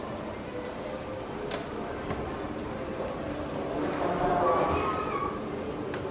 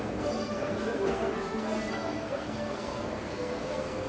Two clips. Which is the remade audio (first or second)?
second